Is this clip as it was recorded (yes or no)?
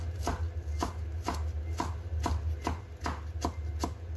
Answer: yes